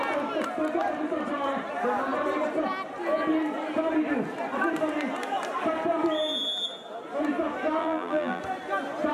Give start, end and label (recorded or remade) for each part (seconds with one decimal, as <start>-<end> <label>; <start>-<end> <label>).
0.0-7.8 recorded; 7.8-8.4 remade; 8.4-9.1 recorded